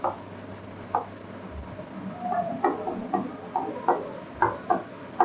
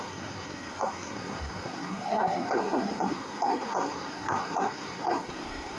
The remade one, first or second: second